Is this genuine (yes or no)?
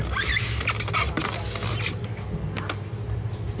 yes